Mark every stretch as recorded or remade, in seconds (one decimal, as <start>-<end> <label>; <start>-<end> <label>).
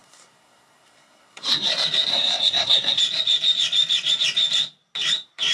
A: 0.0-1.7 remade; 1.7-2.1 recorded; 2.1-3.0 remade; 3.0-5.5 recorded